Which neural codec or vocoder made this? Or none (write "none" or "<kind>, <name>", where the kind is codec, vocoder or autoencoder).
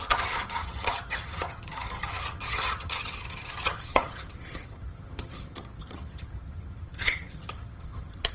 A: vocoder, HiFi-GAN